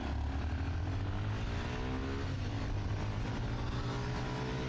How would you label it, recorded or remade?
recorded